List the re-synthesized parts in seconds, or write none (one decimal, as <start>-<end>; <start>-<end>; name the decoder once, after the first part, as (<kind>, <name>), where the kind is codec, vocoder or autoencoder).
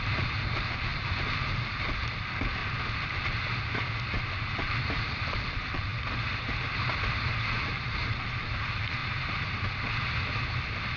0.0-2.6 (vocoder, BigVGAN v2); 4.1-5.9; 7.4-9.0